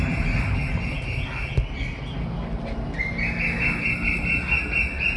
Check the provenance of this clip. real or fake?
real